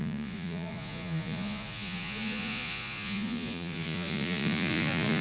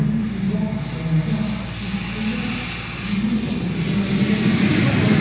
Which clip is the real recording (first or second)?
second